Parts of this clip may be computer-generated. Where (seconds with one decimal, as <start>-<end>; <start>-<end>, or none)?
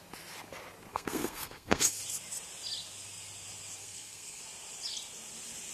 0.9-2.0; 3.8-4.4